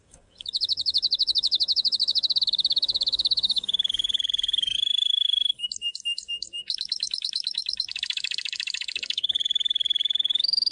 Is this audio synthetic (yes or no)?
yes